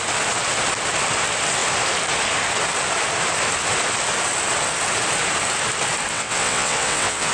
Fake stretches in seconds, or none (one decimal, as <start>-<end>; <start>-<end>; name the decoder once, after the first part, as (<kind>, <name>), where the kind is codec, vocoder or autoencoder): 6.1-7.3 (vocoder, WaveNeXt)